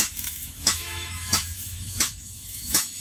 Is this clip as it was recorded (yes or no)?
no